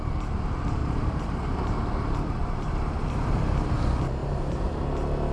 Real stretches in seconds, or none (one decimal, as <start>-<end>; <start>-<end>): 0.0-0.8; 3.7-4.2; 4.8-5.3